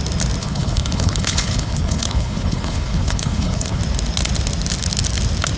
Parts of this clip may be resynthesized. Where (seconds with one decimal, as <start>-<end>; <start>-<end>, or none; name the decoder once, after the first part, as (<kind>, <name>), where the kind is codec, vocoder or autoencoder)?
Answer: 0.4-3.8 (codec, HILCodec)